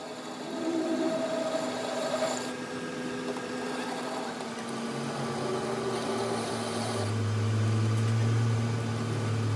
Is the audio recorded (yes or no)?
yes